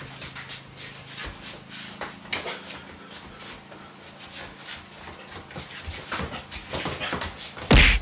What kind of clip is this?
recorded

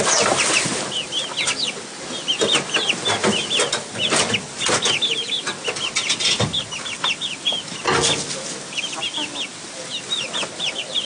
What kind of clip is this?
recorded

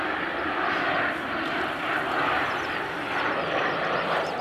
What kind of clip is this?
recorded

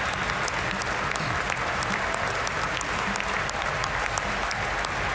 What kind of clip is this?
recorded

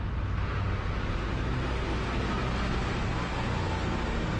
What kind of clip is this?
recorded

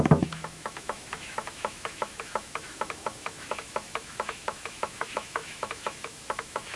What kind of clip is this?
remade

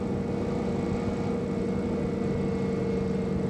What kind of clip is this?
recorded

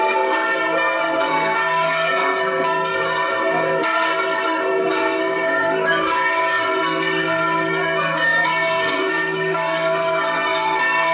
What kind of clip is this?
remade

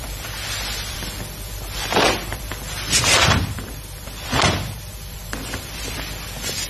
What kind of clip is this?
remade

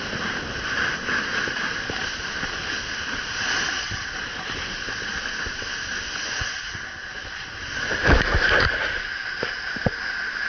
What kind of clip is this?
recorded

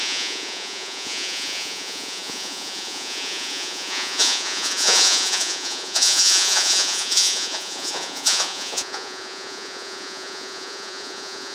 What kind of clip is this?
remade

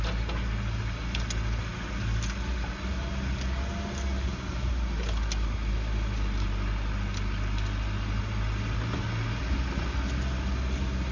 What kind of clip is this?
recorded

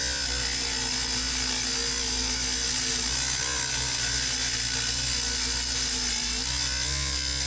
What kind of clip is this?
recorded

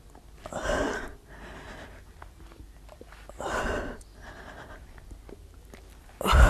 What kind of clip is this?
recorded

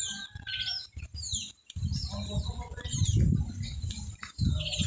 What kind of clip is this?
recorded